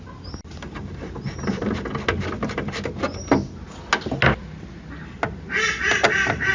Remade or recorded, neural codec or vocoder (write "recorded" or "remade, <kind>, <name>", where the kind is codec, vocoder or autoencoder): recorded